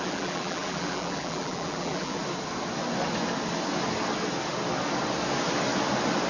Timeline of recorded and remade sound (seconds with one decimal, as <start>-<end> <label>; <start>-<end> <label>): 0.0-2.2 remade; 2.2-6.3 recorded